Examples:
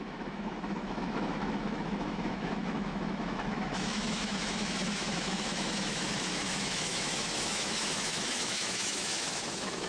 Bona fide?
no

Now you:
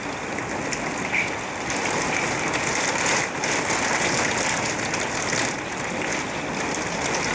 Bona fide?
yes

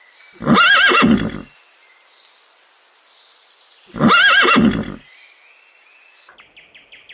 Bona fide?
yes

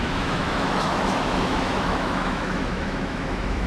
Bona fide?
no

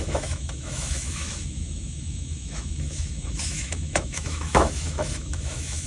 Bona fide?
no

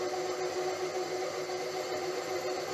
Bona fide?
yes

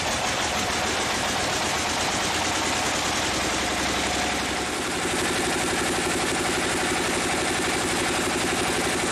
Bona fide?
yes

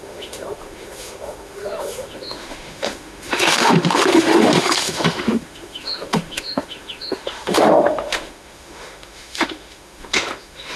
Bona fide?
no